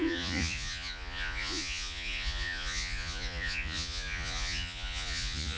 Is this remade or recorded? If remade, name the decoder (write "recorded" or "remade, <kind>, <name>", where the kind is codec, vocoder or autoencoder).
remade, vocoder, Vocos